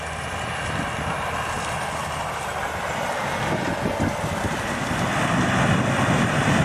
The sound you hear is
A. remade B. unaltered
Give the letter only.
B